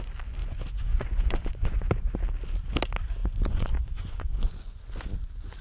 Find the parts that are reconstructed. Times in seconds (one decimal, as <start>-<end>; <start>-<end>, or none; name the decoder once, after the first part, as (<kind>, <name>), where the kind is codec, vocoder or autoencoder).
0.4-1.9 (vocoder, Vocos); 3.2-4.8